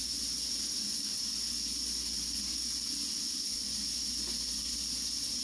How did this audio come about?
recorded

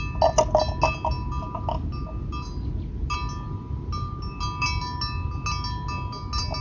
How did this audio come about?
recorded